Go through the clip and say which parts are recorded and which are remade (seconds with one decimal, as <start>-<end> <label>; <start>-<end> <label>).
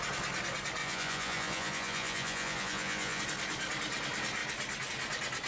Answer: 0.0-0.8 recorded; 0.8-3.2 remade; 3.2-5.5 recorded